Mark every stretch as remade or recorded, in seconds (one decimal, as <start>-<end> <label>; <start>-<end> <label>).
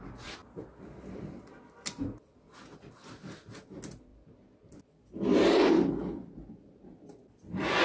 0.0-7.8 recorded